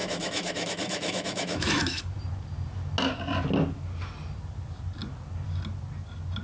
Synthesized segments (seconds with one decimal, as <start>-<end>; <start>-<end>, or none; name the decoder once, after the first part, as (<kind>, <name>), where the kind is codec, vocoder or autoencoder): 0.0-2.0 (autoencoder, DAC-VAE)